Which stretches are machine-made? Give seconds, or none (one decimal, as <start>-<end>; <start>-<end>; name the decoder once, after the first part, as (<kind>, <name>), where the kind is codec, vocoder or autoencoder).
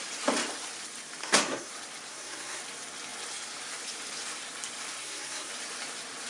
1.2-1.7 (codec, SNAC); 2.1-2.6; 5.0-5.5